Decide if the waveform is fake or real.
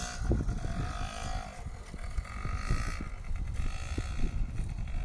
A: real